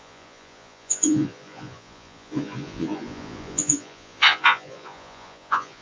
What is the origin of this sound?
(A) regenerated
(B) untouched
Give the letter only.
A